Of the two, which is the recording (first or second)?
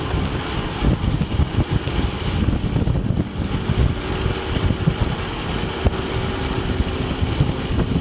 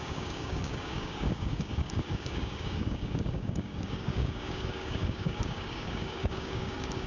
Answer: first